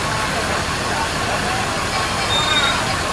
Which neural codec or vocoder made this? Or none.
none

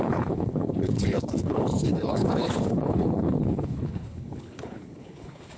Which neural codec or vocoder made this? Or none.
codec, HILCodec